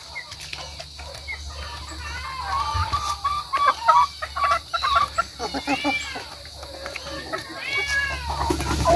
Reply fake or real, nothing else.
real